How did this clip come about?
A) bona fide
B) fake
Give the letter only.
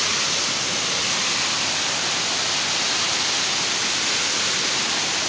A